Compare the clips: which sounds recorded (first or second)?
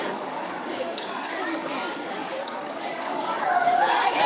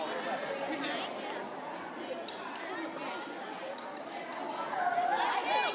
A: second